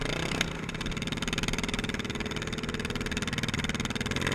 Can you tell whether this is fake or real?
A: real